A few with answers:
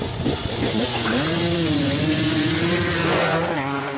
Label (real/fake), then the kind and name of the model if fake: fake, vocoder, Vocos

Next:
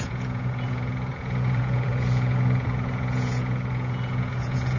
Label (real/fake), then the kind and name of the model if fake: fake, vocoder, Vocos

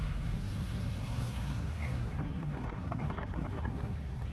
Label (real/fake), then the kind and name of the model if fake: fake, codec, SNAC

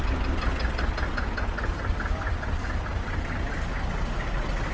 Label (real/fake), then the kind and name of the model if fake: real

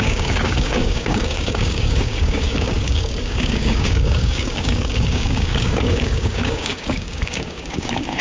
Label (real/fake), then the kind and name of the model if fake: fake, codec, DAC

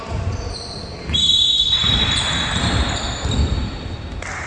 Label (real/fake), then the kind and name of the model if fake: fake, vocoder, BigVGAN v2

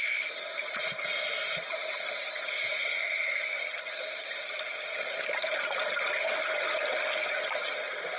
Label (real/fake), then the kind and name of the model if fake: real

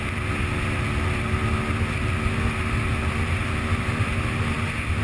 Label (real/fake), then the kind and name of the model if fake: real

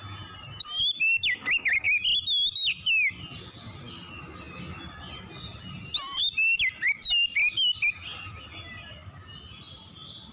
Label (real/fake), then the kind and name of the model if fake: real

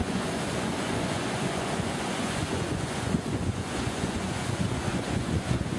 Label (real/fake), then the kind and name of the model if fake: fake, vocoder, Vocos